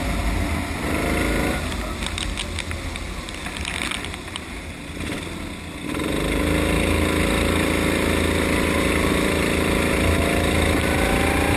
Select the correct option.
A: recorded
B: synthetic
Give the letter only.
A